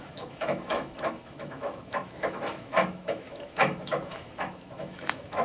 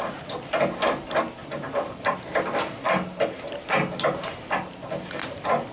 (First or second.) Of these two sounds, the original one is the second